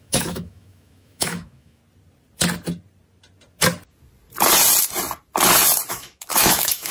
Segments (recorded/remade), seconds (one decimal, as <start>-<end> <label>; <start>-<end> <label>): 0.0-1.8 remade; 1.8-5.9 recorded; 5.9-6.9 remade